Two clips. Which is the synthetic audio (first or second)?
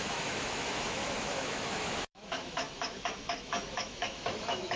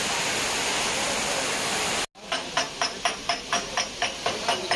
first